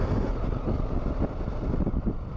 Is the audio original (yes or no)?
yes